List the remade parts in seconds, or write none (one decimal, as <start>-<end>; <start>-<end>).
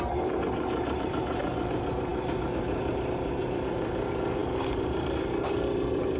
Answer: 0.0-6.2